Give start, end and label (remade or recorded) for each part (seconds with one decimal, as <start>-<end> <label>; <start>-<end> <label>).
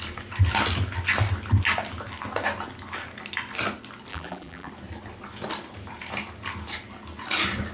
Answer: 0.0-4.1 recorded; 4.1-4.7 remade; 4.7-7.7 recorded